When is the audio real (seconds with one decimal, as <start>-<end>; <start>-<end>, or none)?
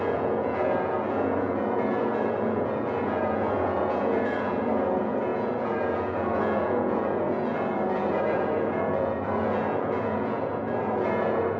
none